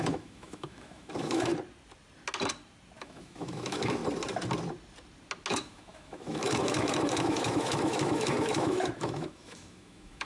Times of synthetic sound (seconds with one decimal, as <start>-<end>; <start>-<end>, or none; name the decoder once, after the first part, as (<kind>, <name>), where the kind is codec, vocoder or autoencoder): 0.0-1.5 (autoencoder, DAC-VAE); 3.0-4.0; 5.5-10.3